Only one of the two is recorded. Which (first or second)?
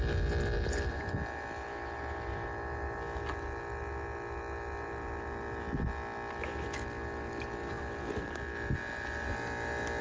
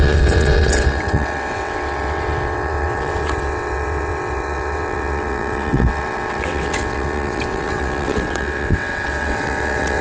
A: first